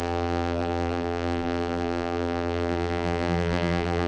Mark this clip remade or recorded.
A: remade